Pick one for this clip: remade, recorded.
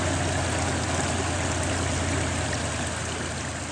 recorded